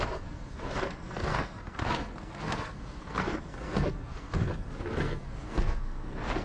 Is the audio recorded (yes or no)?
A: no